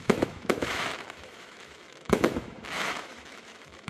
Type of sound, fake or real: fake